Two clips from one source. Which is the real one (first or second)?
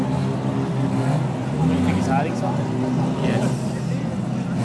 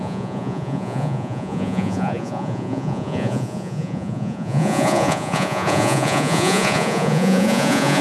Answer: first